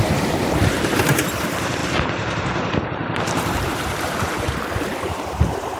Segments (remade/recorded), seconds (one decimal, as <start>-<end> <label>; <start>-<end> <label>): 0.0-5.8 remade

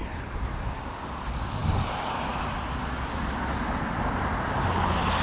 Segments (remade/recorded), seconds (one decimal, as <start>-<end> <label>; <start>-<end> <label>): 0.0-0.5 remade; 0.5-5.2 recorded

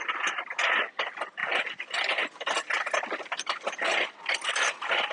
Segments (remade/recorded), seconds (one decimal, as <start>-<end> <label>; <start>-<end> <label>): 0.0-5.1 recorded

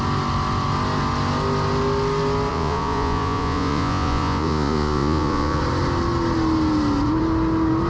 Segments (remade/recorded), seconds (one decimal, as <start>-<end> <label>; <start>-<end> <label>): 0.0-2.5 recorded; 2.5-5.6 remade; 5.6-7.9 recorded

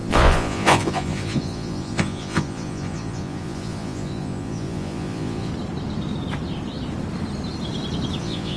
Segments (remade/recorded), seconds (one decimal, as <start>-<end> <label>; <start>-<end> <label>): 0.0-5.5 remade; 5.5-8.2 recorded; 8.2-8.6 remade

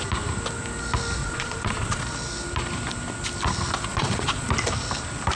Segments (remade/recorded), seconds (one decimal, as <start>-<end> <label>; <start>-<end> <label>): 0.0-1.2 recorded; 1.2-2.0 remade; 2.0-3.9 recorded; 3.9-4.5 remade; 4.5-5.3 recorded

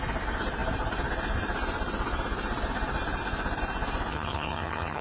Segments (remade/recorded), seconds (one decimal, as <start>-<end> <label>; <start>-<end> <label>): 0.0-4.1 recorded; 4.1-5.0 remade

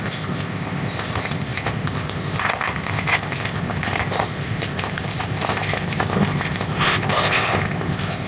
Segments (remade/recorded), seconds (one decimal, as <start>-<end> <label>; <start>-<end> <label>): 0.0-8.3 remade